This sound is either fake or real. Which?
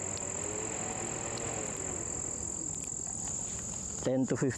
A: real